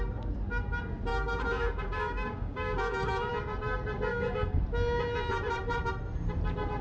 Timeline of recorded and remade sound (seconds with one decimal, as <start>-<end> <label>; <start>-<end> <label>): 0.0-1.1 recorded; 1.1-3.3 remade; 3.3-4.1 recorded; 4.1-4.6 remade; 4.6-6.8 recorded